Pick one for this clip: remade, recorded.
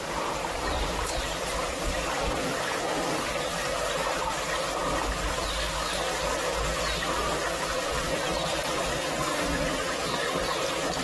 recorded